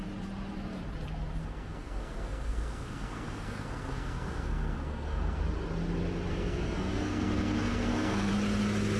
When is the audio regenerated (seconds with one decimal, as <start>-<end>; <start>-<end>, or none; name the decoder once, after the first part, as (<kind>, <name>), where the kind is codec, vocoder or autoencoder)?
1.4-5.4 (codec, SNAC); 6.3-8.3